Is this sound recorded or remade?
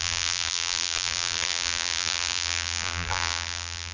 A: remade